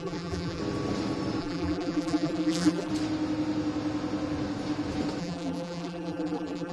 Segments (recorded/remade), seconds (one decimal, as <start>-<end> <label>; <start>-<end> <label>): 0.0-0.6 remade; 0.6-1.4 recorded; 1.4-2.9 remade; 2.9-5.2 recorded; 5.2-6.7 remade